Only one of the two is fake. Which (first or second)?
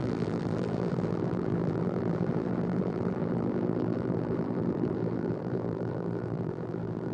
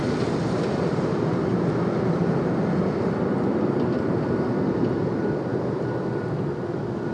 first